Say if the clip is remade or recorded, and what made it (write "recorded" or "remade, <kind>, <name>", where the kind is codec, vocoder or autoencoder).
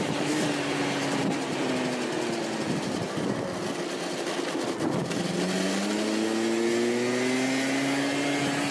recorded